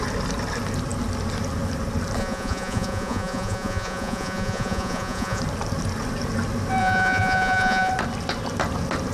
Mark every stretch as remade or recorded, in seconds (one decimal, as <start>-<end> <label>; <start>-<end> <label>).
0.0-2.2 recorded; 2.2-5.4 remade; 5.4-6.8 recorded; 6.8-7.9 remade; 7.9-9.1 recorded